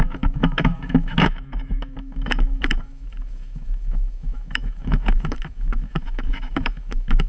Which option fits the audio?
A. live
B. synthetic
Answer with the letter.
B